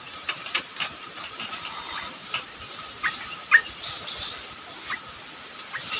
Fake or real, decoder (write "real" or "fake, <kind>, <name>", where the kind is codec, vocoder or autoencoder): fake, vocoder, BigVGAN v2